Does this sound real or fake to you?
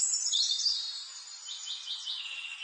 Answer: real